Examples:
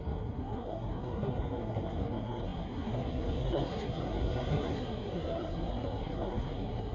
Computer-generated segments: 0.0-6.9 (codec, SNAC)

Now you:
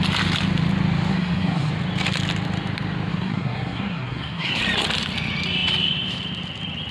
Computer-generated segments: 1.1-1.7 (codec, SNAC); 3.1-4.6

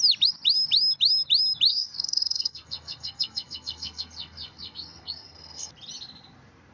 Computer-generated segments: 1.7-5.7 (codec, SNAC)